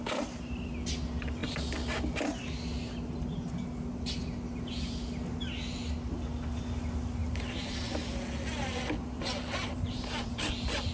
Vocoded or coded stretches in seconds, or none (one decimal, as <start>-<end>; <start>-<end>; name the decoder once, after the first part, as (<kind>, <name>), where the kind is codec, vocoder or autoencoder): 7.2-7.9 (vocoder, BigVGAN v2); 9.0-10.5